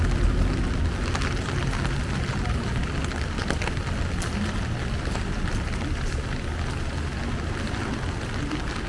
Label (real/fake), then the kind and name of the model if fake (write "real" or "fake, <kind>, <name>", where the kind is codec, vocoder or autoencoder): real